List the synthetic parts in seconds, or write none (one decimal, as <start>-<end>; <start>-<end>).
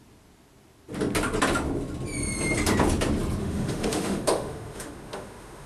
3.4-5.7